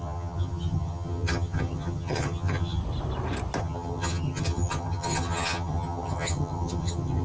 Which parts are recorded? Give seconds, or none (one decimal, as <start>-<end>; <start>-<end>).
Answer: 2.8-3.6